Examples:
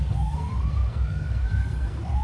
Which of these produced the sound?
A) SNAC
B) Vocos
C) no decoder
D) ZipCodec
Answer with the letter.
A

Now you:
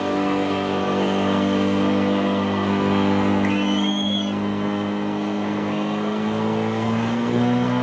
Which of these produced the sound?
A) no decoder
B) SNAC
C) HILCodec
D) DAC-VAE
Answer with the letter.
B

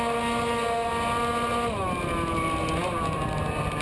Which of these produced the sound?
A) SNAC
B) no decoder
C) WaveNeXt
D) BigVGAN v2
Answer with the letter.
B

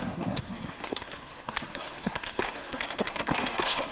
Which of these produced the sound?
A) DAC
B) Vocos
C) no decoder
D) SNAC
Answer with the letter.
D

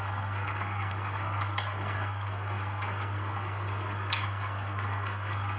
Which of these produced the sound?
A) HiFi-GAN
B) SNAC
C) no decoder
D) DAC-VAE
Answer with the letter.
B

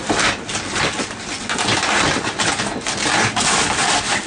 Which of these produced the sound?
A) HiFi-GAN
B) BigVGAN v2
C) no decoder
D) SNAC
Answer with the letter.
C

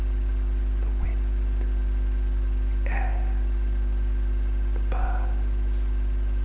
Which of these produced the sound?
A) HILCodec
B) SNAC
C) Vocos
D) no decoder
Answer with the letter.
D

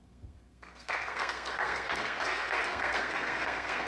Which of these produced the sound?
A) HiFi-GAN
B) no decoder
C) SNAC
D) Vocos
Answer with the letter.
C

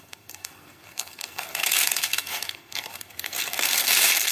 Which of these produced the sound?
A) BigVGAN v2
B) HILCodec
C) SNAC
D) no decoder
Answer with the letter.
C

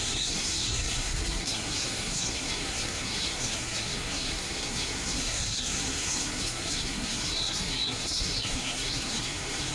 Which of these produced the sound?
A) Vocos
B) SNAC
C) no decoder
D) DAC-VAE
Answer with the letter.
B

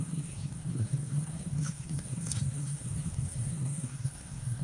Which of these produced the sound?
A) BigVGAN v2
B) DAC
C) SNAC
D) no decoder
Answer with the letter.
C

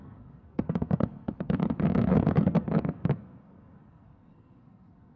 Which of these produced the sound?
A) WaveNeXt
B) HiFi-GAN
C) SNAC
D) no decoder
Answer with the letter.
C